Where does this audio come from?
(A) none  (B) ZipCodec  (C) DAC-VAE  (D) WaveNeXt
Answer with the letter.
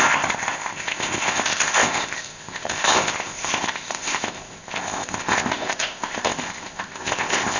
B